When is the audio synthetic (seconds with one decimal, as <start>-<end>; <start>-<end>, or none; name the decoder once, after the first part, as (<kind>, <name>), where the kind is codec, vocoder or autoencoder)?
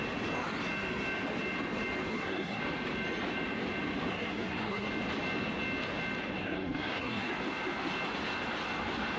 2.1-2.6 (codec, SNAC); 4.1-4.9; 6.4-7.3